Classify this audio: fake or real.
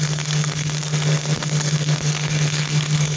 fake